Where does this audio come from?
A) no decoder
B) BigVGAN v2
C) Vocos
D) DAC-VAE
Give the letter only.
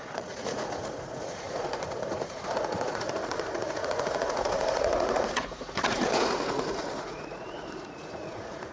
C